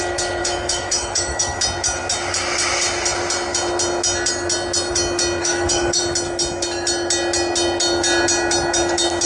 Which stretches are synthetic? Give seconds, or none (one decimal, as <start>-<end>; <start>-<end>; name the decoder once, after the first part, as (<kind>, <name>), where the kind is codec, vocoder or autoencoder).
0.4-1.6 (autoencoder, DAC-VAE); 5.4-6.0